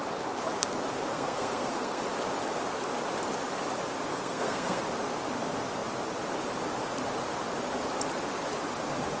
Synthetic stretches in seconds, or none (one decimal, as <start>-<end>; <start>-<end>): 1.1-2.0; 4.1-4.8